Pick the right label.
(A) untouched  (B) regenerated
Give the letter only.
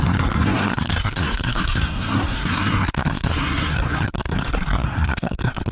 B